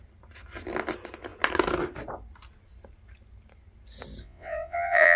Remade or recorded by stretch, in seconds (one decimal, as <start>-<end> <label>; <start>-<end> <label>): 0.0-4.2 recorded; 4.2-5.2 remade